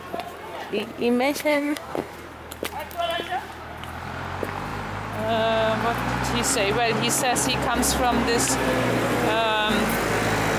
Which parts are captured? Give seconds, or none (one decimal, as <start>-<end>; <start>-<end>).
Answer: 0.0-1.5; 2.1-10.6